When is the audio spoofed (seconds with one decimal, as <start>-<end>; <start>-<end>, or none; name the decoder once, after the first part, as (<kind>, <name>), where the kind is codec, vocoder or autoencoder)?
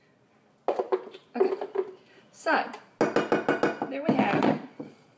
4.3-5.2 (vocoder, Vocos)